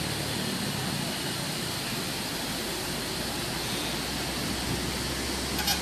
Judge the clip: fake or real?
real